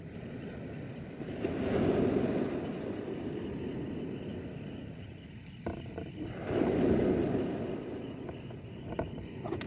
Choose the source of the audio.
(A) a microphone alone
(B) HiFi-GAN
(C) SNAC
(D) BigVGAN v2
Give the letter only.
A